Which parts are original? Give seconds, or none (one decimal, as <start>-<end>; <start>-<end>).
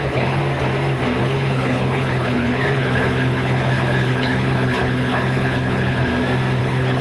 0.4-1.2; 6.1-6.6